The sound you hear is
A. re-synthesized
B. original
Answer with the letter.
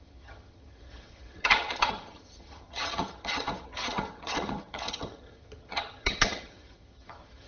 A